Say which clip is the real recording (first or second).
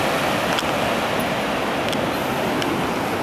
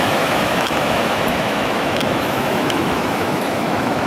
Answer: first